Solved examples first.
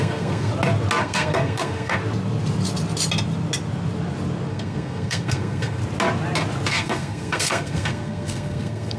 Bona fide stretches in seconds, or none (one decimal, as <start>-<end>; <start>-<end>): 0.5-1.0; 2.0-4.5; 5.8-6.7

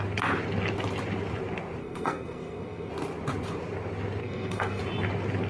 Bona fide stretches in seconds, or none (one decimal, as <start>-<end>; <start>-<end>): 0.0-1.8; 2.9-4.2; 4.8-5.5

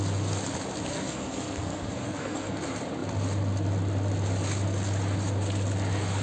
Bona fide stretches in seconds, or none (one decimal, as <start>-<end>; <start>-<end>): 0.0-0.9; 2.6-6.2

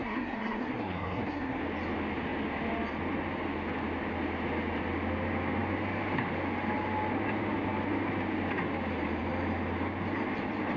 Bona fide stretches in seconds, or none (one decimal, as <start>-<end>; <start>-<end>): 1.6-10.8

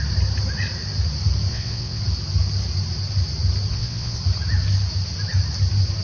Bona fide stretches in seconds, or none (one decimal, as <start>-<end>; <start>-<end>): 0.0-1.5; 2.0-3.7; 4.2-6.0